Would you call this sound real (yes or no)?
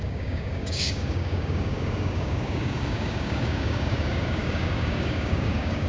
no